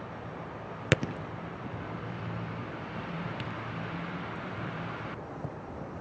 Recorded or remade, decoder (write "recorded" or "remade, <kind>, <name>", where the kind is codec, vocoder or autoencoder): remade, vocoder, BigVGAN v2